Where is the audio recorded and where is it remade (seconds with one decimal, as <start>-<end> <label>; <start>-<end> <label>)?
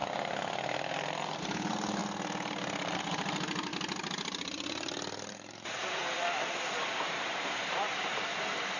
0.0-2.0 remade; 2.0-3.0 recorded; 3.0-3.7 remade; 3.7-5.3 recorded; 5.3-6.0 remade; 6.0-6.7 recorded; 6.7-8.8 remade